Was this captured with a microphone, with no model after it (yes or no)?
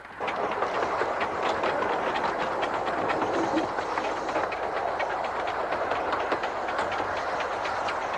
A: yes